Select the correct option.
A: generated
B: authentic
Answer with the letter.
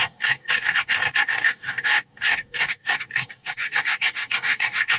A